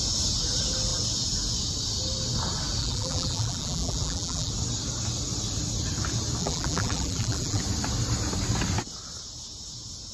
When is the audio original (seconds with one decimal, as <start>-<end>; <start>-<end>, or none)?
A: 0.0-2.8; 4.5-6.4; 7.6-10.1